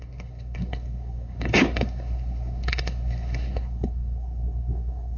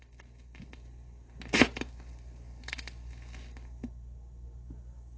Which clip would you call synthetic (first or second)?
first